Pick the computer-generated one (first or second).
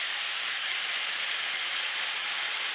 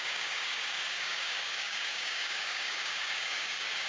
second